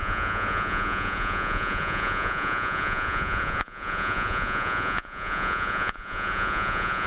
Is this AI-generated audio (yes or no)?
yes